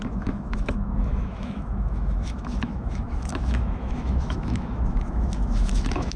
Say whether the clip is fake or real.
fake